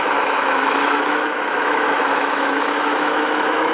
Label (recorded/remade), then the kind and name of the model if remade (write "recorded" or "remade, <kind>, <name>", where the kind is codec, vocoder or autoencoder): remade, autoencoder, DAC-VAE